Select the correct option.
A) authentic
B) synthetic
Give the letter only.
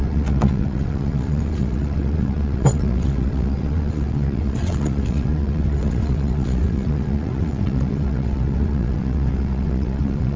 B